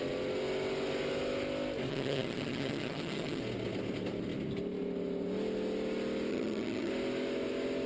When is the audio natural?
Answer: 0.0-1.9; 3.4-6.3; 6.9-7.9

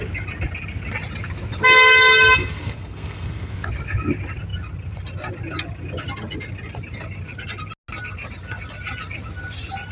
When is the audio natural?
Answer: 0.0-2.4; 3.5-9.9

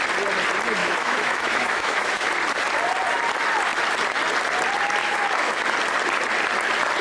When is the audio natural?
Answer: 0.0-0.8; 2.3-5.0; 5.6-7.0

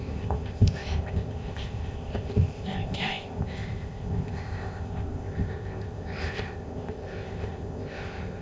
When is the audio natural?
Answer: none

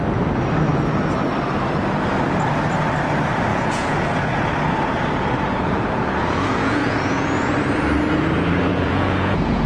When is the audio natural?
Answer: 0.0-3.5; 4.5-5.8; 7.5-8.7

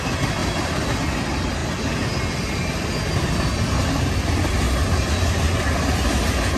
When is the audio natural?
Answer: 0.0-0.4; 0.9-6.6